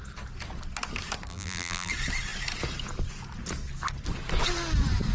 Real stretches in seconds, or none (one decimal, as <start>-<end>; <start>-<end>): 0.0-1.3; 1.9-5.1